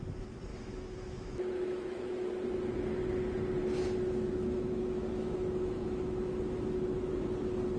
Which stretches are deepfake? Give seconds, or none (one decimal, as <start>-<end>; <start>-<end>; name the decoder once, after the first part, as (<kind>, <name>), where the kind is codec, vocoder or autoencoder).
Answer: 0.5-2.3 (autoencoder, DAC-VAE); 3.6-7.1